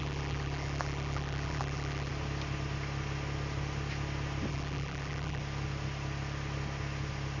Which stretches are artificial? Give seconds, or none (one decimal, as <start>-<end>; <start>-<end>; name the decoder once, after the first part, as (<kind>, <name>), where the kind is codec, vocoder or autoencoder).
0.0-2.1 (vocoder, BigVGAN v2); 4.5-5.4

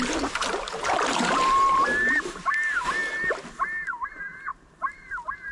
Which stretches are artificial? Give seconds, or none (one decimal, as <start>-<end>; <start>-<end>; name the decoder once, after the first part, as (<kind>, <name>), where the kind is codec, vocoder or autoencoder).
0.0-3.0 (vocoder, BigVGAN v2); 3.9-5.5

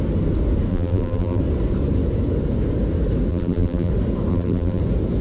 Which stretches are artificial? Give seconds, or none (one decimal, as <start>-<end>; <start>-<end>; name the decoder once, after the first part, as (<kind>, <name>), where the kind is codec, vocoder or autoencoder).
0.7-1.4 (vocoder, BigVGAN v2); 3.3-3.9; 4.3-4.8

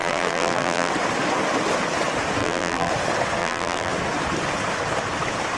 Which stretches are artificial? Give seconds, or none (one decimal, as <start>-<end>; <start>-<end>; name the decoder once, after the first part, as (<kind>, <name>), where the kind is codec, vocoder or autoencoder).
0.0-0.9 (vocoder, BigVGAN v2); 2.4-2.9; 3.4-3.9

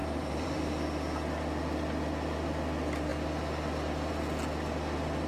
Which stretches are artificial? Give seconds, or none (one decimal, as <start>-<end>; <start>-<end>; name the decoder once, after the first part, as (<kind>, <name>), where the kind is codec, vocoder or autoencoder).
0.0-0.7 (vocoder, BigVGAN v2)

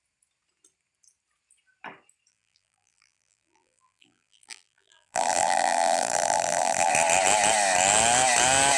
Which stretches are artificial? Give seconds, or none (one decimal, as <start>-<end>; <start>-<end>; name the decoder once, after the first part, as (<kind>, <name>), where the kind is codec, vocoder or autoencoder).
2.3-6.9 (vocoder, BigVGAN v2)